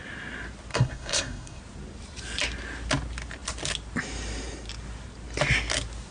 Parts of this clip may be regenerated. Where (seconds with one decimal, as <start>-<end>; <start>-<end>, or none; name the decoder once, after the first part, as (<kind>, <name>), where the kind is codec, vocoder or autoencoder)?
0.7-1.6 (codec, SNAC)